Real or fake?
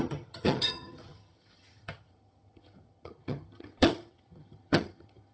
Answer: fake